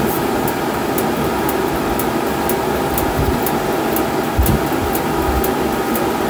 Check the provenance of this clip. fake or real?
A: real